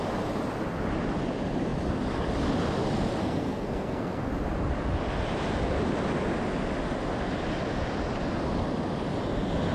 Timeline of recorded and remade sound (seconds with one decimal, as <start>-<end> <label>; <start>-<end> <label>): 0.0-3.2 recorded; 3.2-4.3 remade; 4.3-9.7 recorded